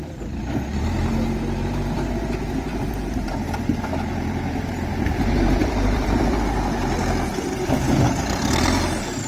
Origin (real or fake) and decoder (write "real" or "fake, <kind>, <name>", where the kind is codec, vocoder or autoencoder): fake, vocoder, BigVGAN v2